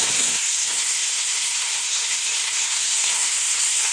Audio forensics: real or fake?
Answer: fake